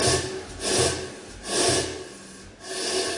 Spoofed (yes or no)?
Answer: no